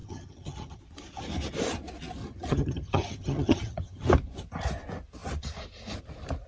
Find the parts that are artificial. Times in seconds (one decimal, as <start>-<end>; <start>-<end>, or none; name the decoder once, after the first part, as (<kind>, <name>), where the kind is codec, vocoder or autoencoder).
0.0-0.8 (vocoder, HiFi-GAN); 2.2-4.1